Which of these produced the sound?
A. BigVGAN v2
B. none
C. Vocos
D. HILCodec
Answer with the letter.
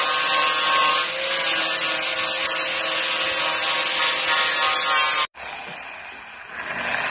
B